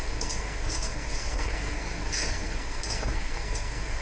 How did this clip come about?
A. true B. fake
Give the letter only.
B